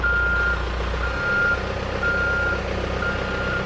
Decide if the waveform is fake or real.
real